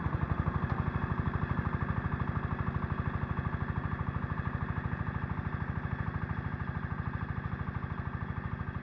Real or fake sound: real